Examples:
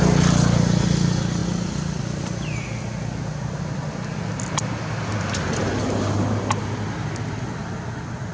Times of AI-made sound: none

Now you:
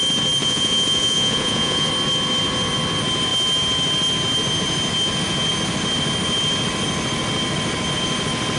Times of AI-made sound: 0.4-1.9 (vocoder, Vocos)